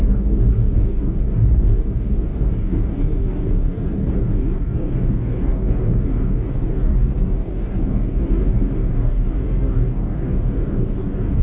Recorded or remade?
remade